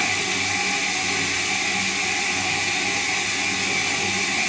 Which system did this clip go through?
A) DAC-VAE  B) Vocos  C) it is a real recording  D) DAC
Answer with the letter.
C